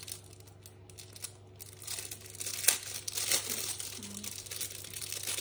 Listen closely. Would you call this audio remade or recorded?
recorded